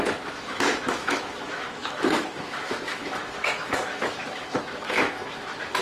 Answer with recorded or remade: remade